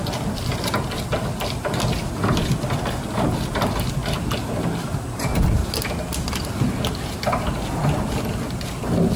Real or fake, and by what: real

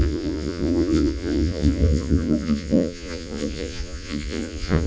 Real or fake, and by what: fake, vocoder, Vocos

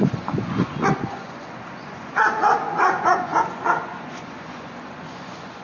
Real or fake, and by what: fake, vocoder, Vocos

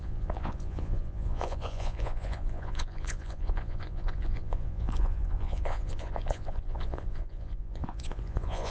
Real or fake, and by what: fake, vocoder, Vocos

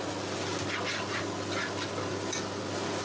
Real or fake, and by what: real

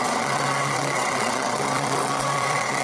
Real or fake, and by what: fake, vocoder, WaveNeXt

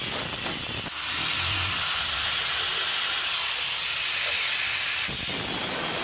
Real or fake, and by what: real